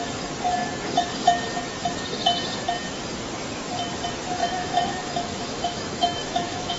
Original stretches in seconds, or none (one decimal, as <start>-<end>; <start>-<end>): 0.0-4.4

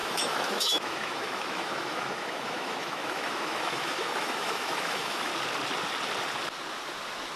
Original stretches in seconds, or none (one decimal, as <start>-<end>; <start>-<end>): 5.3-7.4

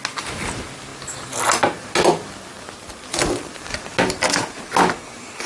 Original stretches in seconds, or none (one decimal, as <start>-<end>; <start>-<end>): 0.0-5.5

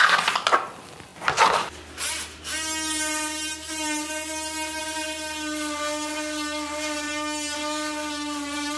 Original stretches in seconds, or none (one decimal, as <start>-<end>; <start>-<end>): 0.0-8.8